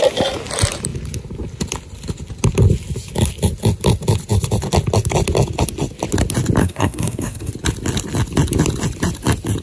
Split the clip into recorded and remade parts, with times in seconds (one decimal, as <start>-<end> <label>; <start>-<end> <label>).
0.0-6.6 recorded; 6.6-7.5 remade; 7.5-9.6 recorded